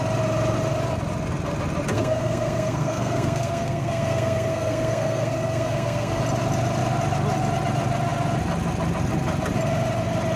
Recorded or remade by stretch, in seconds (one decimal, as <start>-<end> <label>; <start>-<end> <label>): 0.0-1.9 recorded; 1.9-6.2 remade; 6.2-10.4 recorded